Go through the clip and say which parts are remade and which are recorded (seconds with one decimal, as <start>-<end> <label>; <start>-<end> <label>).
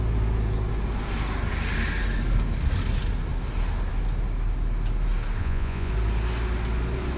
0.0-5.4 recorded; 5.4-5.9 remade; 5.9-7.2 recorded